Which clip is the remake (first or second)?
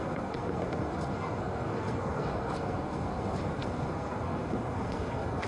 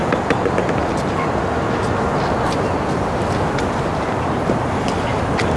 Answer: first